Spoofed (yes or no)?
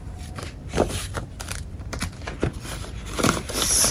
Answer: yes